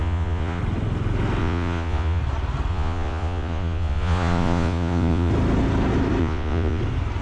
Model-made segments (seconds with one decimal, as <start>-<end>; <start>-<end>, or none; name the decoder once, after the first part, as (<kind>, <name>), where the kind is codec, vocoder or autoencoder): 0.0-0.6 (vocoder, Vocos); 1.4-2.2; 2.7-5.3; 6.2-6.8